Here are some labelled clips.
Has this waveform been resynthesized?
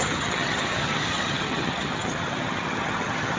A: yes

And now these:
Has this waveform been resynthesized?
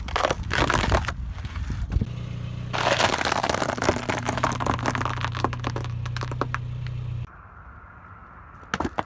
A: no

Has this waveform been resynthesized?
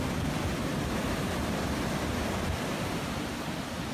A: no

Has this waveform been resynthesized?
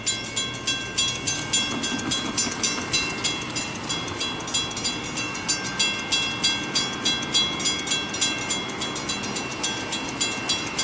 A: no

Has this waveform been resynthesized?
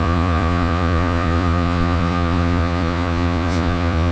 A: yes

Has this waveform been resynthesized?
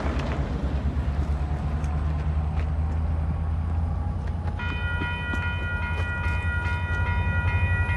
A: no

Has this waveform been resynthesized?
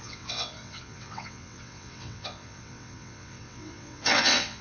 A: yes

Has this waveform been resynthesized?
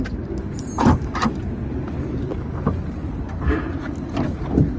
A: no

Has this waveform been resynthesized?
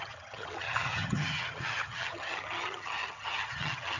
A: yes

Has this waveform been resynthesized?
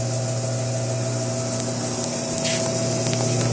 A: no